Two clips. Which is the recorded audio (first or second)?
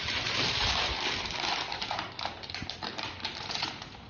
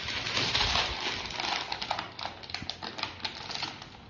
second